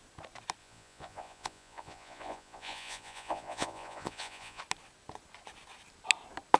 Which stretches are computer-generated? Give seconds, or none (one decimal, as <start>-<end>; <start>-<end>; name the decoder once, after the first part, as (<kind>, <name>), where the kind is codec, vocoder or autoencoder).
0.6-4.6 (vocoder, Vocos)